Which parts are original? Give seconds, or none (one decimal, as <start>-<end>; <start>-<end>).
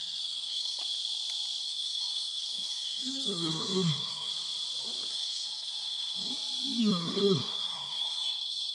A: 0.8-1.6; 4.3-5.1; 6.3-6.8